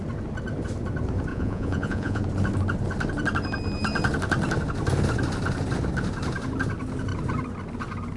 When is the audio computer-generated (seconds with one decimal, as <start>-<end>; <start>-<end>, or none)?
1.3-2.2